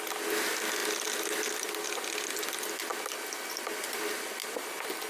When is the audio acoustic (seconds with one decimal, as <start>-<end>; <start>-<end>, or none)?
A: 0.0-5.1